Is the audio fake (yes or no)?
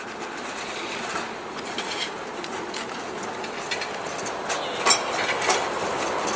no